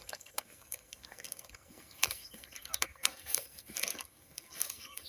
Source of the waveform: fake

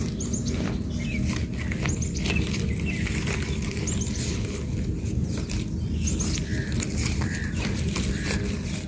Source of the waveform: real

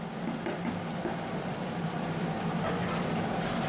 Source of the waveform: real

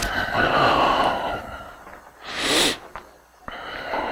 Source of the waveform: real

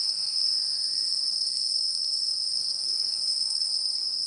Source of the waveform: fake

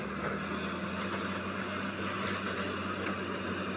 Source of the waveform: real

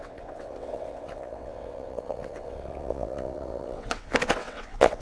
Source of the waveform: fake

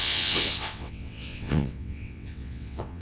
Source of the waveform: fake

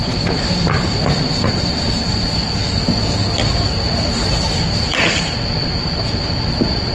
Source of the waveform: fake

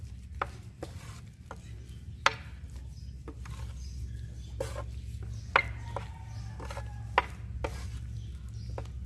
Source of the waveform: real